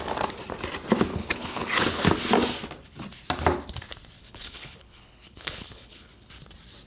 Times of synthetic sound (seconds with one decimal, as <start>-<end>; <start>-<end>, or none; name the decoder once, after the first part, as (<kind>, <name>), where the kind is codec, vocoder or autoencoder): 1.1-2.0 (codec, HILCodec); 4.2-6.3